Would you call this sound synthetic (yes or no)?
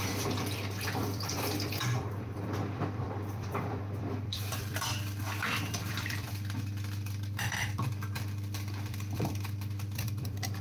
yes